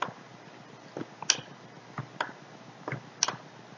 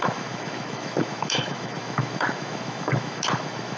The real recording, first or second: first